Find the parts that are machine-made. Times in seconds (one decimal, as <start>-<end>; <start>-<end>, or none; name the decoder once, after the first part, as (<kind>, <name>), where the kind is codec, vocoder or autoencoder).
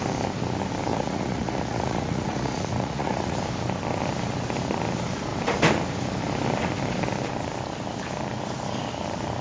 0.9-3.4 (vocoder, Vocos)